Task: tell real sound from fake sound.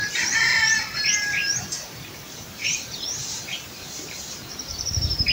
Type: fake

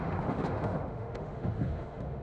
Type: fake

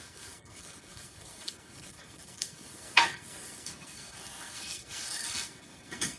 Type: fake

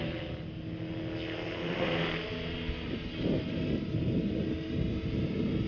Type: real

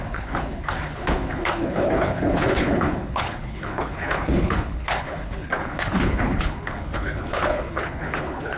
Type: fake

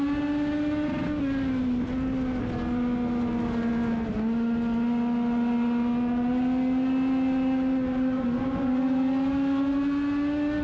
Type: real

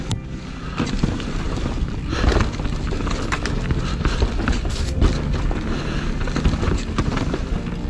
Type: real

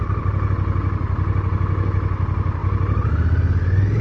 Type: real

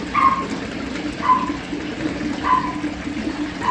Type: real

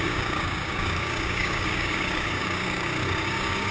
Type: fake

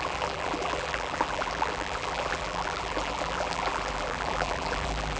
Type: fake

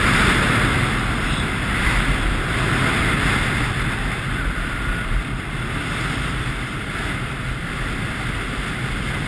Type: real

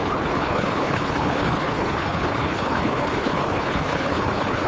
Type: fake